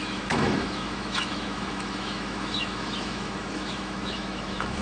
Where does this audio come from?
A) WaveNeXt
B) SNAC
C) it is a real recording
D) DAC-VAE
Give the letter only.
D